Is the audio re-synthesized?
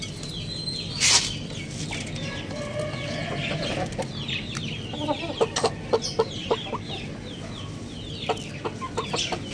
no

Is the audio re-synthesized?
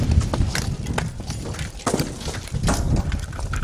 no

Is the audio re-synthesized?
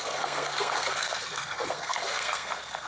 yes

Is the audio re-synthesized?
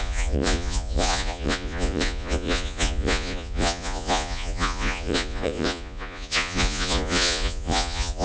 yes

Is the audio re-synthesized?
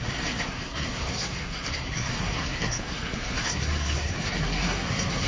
yes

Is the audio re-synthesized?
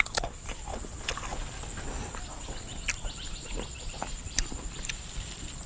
no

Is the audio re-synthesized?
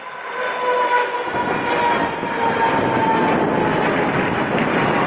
no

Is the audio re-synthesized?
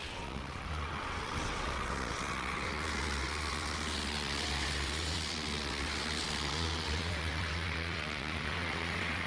yes